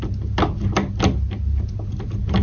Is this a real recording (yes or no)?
yes